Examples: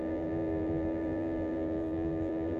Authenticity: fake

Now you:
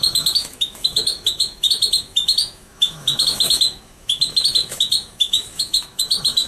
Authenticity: fake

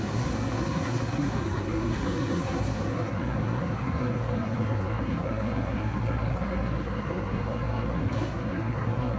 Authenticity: fake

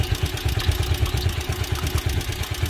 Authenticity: real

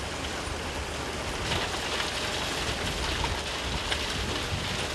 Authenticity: real